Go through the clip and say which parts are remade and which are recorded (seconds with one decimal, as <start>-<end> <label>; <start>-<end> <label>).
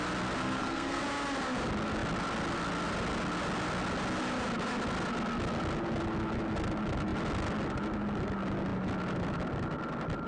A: 0.0-0.4 recorded; 0.4-1.0 remade; 1.0-10.3 recorded